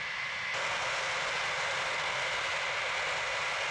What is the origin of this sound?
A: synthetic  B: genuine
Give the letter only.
B